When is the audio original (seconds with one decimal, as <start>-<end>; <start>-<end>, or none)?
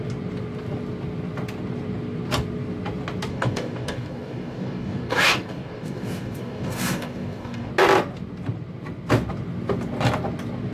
0.0-3.3; 7.7-10.7